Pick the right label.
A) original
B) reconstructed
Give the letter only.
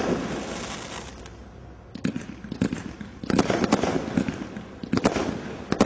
A